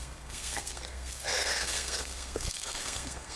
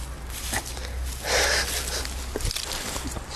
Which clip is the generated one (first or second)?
first